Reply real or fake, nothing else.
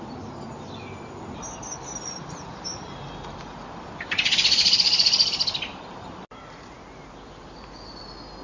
real